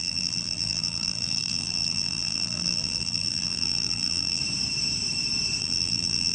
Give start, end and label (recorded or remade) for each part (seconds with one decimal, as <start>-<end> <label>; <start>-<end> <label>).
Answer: 0.0-4.4 remade; 4.4-5.6 recorded; 5.6-6.3 remade